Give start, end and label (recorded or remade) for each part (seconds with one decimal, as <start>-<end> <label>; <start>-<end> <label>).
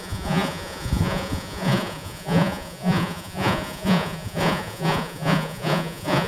0.0-6.3 remade